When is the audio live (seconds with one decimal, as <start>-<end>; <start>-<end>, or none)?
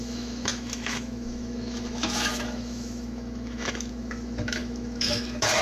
none